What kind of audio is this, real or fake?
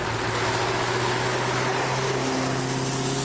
real